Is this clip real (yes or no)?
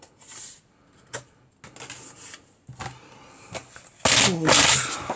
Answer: yes